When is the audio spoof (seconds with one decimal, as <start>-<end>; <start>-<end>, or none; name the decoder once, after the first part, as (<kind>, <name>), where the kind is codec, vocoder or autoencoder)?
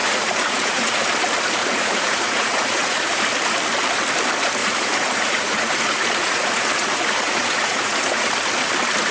0.0-1.0 (vocoder, Vocos); 1.6-3.2; 4.6-8.3